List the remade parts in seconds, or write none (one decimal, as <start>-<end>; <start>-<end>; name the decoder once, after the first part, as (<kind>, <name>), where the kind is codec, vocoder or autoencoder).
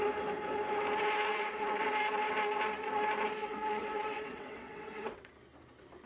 1.3-1.8 (vocoder, WaveNeXt); 3.4-5.3